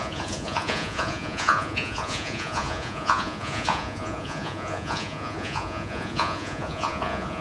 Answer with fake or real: fake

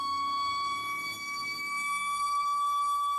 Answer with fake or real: fake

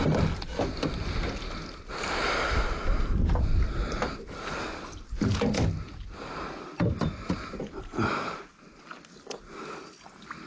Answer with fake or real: real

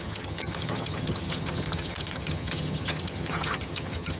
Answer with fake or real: fake